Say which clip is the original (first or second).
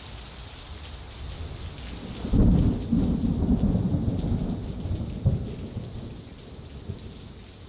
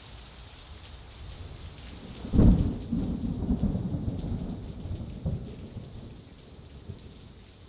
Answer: first